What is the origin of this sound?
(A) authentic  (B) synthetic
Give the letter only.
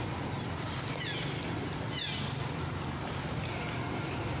A